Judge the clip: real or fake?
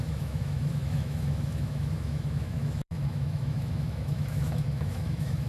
fake